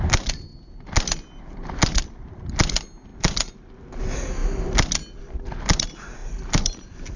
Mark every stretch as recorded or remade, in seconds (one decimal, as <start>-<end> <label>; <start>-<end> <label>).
0.0-3.1 recorded; 3.1-4.0 remade; 4.0-6.2 recorded; 6.2-7.2 remade